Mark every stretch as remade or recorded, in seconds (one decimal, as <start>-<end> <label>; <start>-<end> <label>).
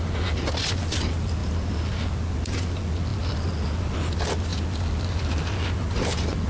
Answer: 0.0-6.5 recorded